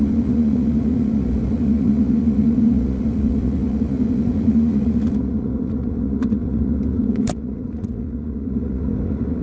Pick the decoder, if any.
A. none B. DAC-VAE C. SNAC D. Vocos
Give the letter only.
D